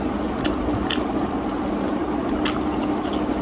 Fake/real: real